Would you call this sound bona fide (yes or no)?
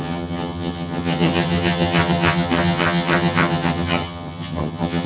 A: no